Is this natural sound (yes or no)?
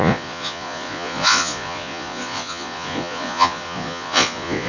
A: no